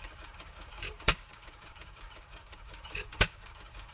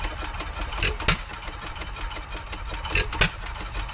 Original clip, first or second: second